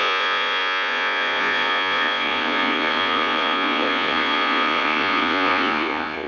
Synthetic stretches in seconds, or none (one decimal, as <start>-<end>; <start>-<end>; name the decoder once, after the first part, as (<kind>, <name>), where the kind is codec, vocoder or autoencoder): 0.0-6.3 (vocoder, Vocos)